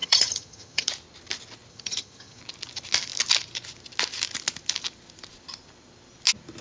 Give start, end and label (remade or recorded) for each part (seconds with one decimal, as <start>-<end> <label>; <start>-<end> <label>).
0.0-0.9 remade; 0.9-1.7 recorded; 1.7-2.4 remade; 2.4-6.6 recorded